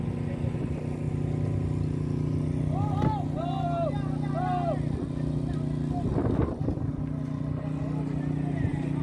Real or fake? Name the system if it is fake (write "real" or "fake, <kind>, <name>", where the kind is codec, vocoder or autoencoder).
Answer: real